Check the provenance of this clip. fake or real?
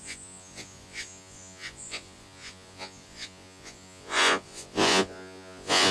fake